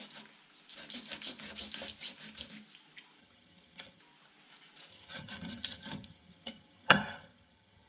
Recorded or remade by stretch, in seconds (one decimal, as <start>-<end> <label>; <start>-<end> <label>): 0.0-3.2 recorded; 3.2-4.0 remade; 4.0-4.9 recorded; 4.9-7.9 remade